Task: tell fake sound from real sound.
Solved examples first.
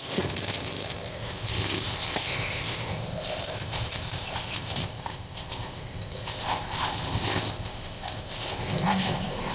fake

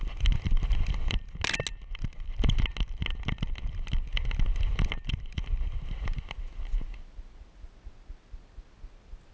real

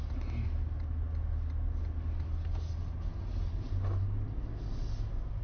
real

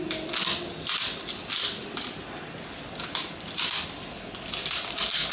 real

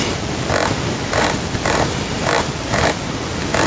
real